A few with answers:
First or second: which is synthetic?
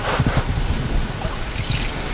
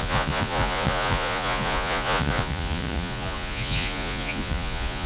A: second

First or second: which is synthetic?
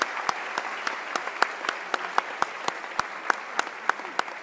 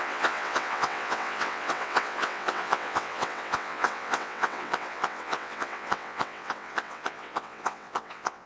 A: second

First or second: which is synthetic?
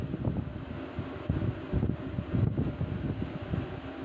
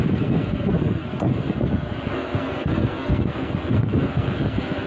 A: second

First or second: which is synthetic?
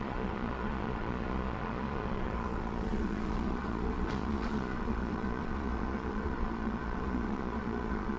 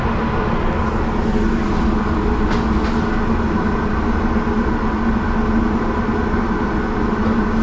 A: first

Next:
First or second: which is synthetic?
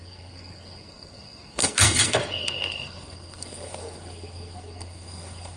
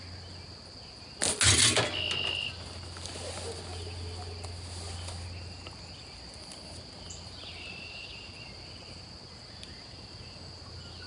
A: first